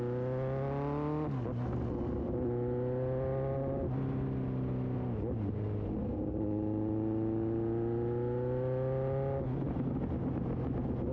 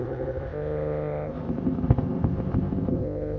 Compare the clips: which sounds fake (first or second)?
second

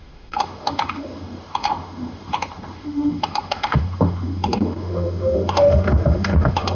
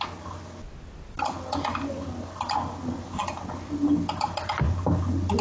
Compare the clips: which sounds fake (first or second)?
first